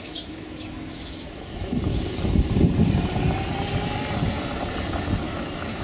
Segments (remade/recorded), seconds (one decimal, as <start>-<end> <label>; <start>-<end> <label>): 0.0-1.7 remade; 1.7-5.2 recorded; 5.2-5.8 remade